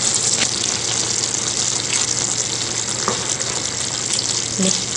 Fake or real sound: real